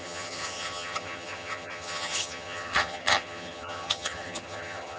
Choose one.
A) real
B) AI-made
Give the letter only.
B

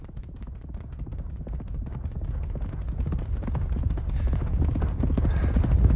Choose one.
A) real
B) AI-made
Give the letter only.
A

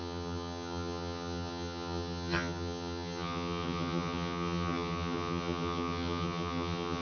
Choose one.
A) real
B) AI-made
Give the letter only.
B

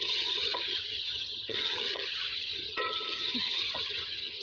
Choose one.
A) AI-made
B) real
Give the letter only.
A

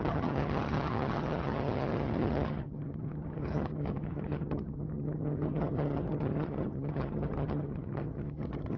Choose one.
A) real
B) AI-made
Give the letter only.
B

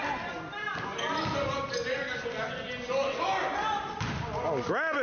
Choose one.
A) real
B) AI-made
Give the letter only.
A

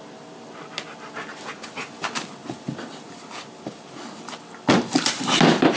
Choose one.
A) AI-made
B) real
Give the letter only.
B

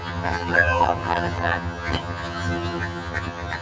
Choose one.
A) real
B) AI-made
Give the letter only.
B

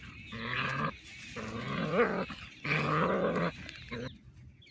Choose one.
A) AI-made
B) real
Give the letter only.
B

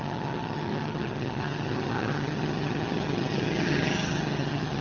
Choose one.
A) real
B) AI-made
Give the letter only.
B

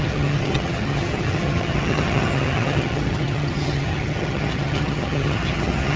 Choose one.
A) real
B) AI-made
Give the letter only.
B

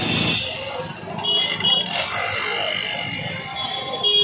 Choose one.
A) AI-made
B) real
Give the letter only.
B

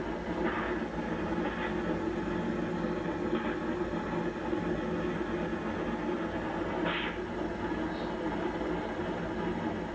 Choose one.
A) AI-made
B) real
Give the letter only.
B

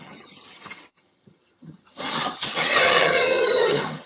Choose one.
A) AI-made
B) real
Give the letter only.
A